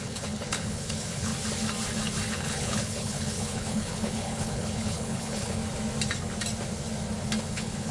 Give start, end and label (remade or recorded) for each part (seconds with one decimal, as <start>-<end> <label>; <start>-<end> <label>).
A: 0.0-1.3 remade; 1.3-2.3 recorded; 2.3-5.6 remade; 5.6-7.4 recorded; 7.4-7.9 remade